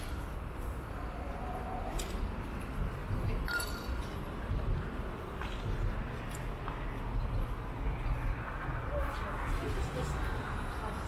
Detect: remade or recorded recorded